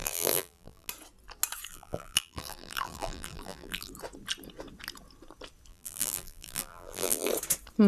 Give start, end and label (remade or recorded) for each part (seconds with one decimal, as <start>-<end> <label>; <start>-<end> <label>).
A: 0.0-0.9 remade; 0.9-1.7 recorded; 1.7-3.9 remade; 3.9-5.7 recorded; 5.7-7.3 remade; 7.3-7.9 recorded